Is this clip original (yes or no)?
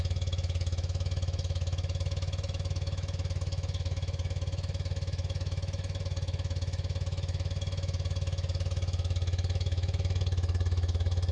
no